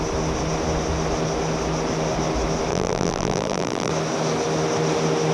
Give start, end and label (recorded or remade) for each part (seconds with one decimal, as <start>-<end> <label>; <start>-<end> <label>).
0.0-2.7 recorded; 2.7-3.9 remade; 3.9-5.3 recorded